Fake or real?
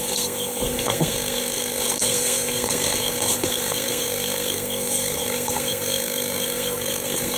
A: fake